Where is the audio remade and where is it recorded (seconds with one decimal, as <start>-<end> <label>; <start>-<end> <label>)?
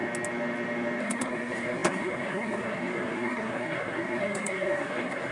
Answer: 0.0-1.0 recorded; 1.0-5.3 remade